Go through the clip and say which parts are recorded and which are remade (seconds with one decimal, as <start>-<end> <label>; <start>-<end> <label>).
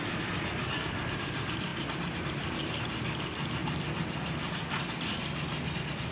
0.0-6.1 recorded